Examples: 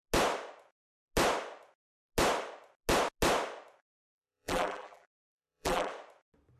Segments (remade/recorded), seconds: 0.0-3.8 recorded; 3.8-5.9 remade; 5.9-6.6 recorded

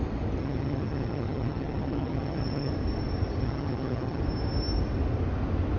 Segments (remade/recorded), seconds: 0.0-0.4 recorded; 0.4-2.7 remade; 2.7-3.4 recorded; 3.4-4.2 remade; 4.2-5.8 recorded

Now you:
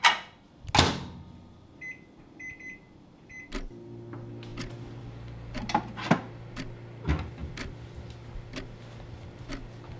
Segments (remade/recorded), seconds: 0.0-10.0 recorded